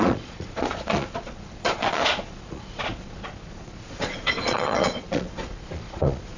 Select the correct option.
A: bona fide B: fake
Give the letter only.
B